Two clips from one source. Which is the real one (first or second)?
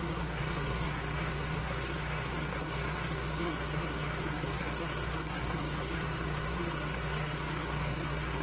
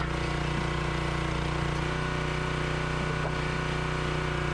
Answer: second